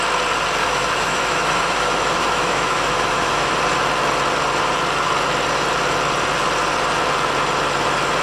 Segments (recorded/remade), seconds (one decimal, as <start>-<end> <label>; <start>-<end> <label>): 0.0-0.6 recorded; 0.6-3.5 remade; 3.5-8.2 recorded